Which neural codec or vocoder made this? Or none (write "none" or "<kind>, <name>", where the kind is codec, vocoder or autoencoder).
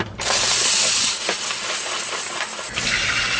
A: none